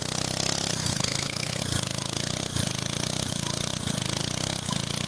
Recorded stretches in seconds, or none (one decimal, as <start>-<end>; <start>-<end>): 0.0-0.7; 1.6-5.1